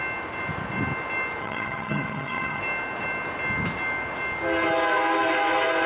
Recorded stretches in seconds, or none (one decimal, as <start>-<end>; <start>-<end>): 0.0-1.4; 2.6-5.9